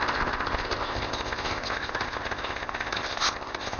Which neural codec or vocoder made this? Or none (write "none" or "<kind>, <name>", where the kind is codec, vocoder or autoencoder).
codec, ZipCodec